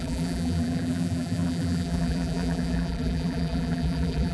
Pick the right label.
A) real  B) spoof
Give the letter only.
B